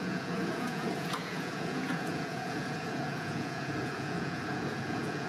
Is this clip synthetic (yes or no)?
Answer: yes